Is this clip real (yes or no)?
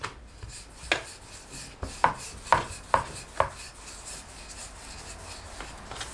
yes